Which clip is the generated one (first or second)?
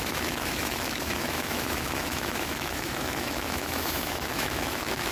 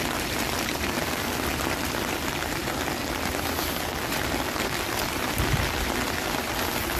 first